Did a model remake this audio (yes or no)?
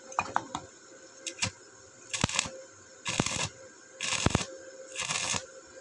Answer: yes